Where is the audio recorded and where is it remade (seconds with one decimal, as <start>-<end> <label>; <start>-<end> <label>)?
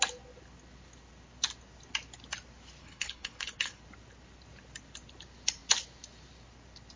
0.0-2.8 recorded; 2.8-3.8 remade; 3.8-7.0 recorded